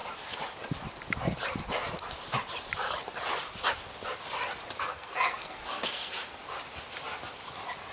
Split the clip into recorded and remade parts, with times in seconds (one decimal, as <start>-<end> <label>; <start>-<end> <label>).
0.0-4.9 recorded; 4.9-6.4 remade; 6.4-7.9 recorded